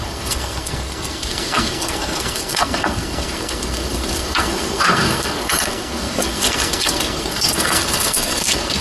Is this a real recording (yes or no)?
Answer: no